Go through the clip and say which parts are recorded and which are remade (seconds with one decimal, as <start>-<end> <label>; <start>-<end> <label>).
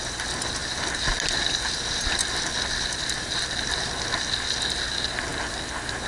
0.0-6.1 recorded